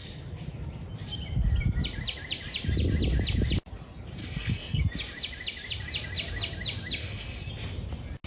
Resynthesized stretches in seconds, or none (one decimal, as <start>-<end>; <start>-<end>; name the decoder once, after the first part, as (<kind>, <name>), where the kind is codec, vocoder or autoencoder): 4.2-4.8 (codec, SNAC); 7.0-7.5